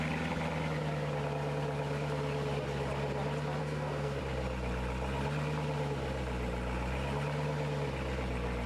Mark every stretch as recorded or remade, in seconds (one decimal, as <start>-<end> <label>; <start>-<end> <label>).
0.0-3.6 recorded; 3.6-4.2 remade; 4.2-8.7 recorded